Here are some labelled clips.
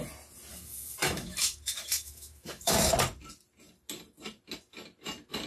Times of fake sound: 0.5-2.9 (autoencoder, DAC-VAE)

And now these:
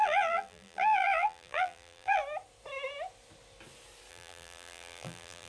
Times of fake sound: 0.0-2.2 (vocoder, BigVGAN v2); 4.1-5.5

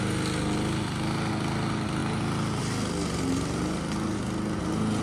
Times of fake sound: none

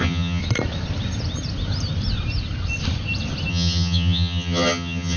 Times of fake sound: 0.0-0.4 (vocoder, HiFi-GAN); 3.5-5.2

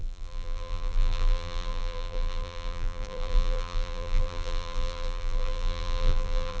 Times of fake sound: 0.0-6.6 (vocoder, BigVGAN v2)